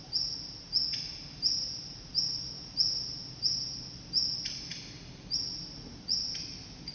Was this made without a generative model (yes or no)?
yes